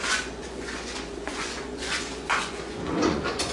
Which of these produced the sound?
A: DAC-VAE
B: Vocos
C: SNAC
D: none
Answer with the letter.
B